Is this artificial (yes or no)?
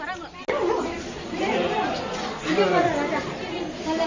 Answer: no